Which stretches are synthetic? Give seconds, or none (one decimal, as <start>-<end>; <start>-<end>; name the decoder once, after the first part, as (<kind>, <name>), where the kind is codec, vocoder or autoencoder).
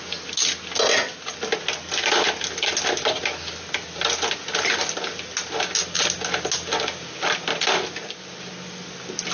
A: none